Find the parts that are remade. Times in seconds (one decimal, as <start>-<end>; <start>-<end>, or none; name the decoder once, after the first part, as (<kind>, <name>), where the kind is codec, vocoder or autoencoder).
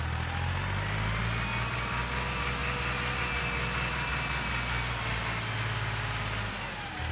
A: none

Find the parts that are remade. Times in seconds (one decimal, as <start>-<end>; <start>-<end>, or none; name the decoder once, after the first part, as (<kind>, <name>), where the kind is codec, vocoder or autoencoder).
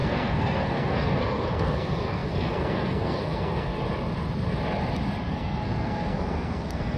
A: 0.0-3.7 (codec, SNAC); 5.3-7.0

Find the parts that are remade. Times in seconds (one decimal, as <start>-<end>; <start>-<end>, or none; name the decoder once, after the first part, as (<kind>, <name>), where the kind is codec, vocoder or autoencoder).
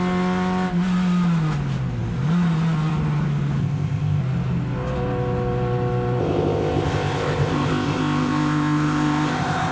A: 3.6-4.2 (codec, ZipCodec); 6.2-9.7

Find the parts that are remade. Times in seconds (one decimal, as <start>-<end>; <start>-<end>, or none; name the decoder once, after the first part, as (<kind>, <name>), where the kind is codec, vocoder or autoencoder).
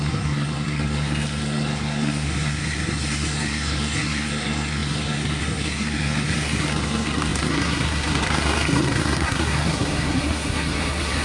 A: 0.0-11.2 (codec, SNAC)